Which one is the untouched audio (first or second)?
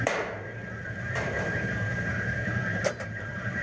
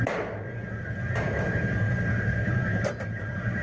second